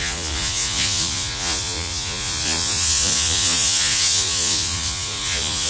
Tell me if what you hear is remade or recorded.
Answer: remade